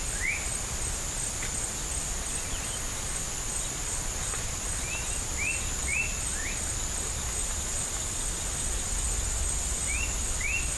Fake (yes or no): no